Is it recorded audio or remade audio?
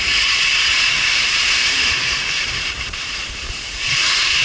remade